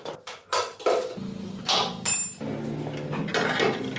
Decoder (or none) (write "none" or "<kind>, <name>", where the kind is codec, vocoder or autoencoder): none